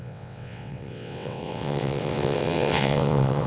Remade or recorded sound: remade